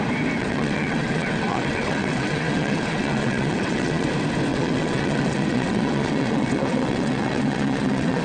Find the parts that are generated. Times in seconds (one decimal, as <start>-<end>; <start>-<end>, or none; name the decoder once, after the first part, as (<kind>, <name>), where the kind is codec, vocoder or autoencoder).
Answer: 0.4-4.1 (vocoder, WaveNeXt); 4.5-8.2